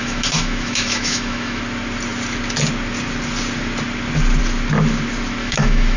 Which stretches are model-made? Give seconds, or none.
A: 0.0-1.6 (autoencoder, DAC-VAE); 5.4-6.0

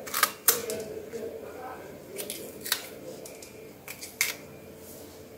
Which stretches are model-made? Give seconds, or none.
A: none

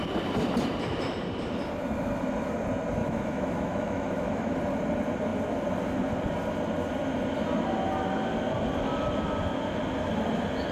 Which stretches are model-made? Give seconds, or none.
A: 3.0-4.6 (autoencoder, DAC-VAE)